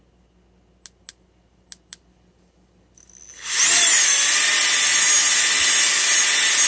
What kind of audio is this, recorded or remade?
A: recorded